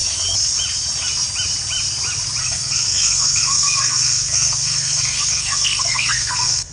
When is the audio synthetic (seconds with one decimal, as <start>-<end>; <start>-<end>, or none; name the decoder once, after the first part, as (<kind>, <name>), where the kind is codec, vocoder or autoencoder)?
2.4-6.7 (codec, SNAC)